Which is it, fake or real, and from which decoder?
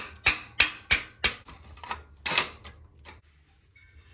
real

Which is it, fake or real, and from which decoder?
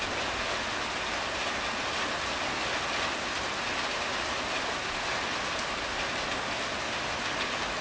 real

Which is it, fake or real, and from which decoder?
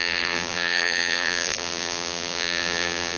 fake, vocoder, BigVGAN v2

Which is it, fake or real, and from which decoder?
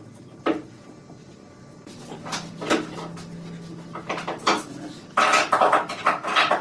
real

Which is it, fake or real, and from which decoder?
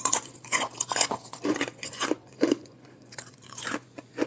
fake, vocoder, Vocos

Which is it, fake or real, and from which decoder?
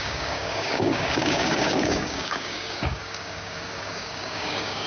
fake, codec, DAC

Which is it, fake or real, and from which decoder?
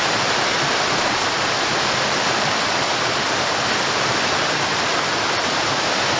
real